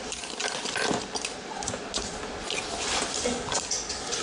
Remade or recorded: recorded